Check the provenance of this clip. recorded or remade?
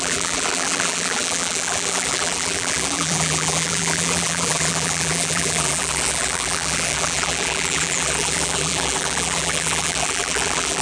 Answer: remade